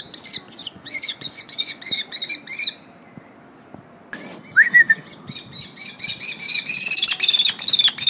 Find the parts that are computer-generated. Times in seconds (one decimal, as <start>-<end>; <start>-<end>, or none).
0.6-1.8